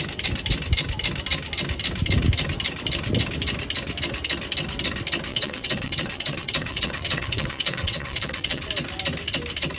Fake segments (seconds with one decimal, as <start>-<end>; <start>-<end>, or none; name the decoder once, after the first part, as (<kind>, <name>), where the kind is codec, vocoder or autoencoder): 5.3-8.7 (vocoder, WaveNeXt)